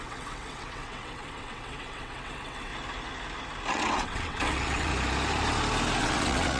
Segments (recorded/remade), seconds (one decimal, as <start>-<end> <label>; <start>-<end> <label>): 0.0-2.7 remade; 2.7-3.7 recorded; 3.7-4.9 remade; 4.9-6.0 recorded; 6.0-6.6 remade